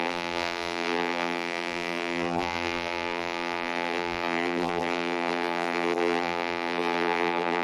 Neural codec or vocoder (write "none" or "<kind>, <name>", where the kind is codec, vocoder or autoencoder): vocoder, BigVGAN v2